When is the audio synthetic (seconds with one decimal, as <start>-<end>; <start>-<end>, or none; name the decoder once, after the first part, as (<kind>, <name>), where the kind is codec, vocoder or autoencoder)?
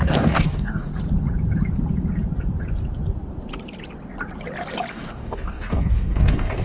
0.0-0.9 (codec, DAC); 4.9-6.6